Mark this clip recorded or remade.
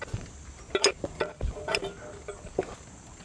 recorded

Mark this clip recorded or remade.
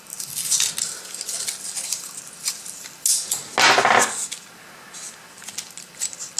recorded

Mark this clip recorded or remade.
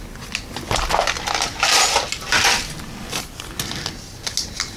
recorded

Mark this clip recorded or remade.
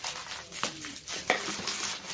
recorded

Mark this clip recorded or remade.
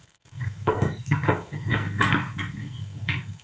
remade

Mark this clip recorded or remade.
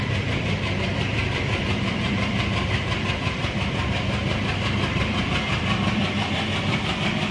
remade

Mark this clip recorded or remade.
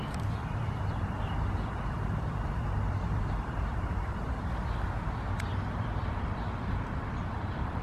remade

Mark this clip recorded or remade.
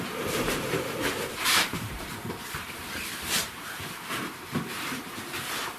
remade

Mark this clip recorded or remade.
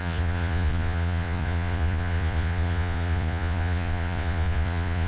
remade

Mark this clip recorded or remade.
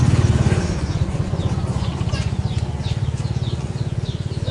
remade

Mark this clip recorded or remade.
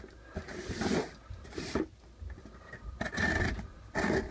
recorded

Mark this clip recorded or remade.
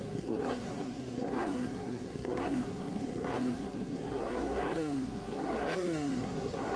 remade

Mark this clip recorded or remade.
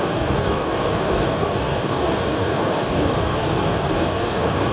remade